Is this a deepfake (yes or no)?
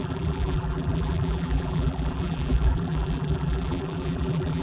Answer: yes